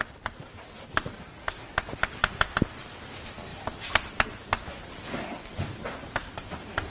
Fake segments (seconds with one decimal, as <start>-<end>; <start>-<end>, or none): 0.0-6.9

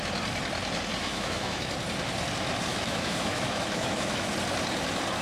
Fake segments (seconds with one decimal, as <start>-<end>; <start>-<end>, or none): 1.0-1.7; 2.7-4.3

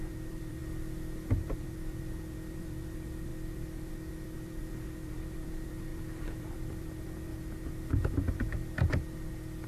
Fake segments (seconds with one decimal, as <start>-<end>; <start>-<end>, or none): 0.0-0.6; 1.3-7.3